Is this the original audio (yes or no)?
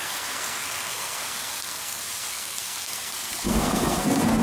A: no